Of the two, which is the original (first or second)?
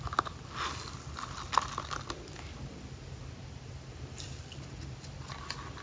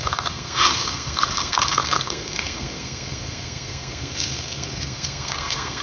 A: first